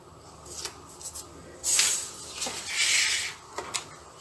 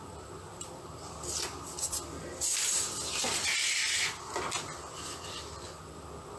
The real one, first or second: first